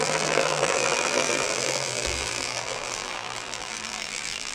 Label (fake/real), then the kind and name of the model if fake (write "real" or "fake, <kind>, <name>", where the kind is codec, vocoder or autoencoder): fake, vocoder, BigVGAN v2